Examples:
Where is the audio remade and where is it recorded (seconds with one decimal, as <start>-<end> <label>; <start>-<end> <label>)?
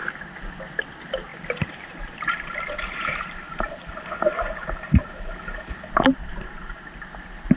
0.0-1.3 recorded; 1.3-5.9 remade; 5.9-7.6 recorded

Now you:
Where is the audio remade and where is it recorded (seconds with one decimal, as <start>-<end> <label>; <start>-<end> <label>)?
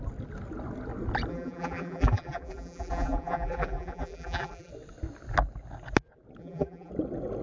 0.0-1.3 recorded; 1.3-4.7 remade; 4.7-6.4 recorded; 6.4-6.9 remade; 6.9-7.4 recorded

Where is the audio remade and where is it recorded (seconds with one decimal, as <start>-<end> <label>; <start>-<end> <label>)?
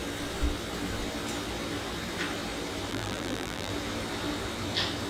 0.0-2.9 recorded; 2.9-3.7 remade; 3.7-5.1 recorded